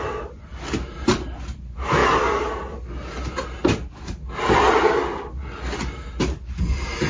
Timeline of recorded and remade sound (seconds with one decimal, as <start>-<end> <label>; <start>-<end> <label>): 0.0-7.1 recorded